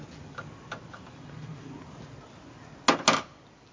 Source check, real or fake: real